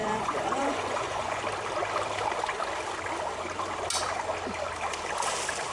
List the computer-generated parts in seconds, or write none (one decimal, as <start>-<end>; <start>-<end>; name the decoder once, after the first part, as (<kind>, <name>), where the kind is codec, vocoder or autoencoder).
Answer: 0.0-1.4 (vocoder, Vocos)